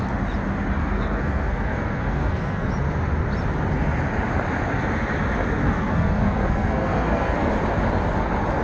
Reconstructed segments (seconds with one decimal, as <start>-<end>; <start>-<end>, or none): 0.8-2.7; 5.6-7.5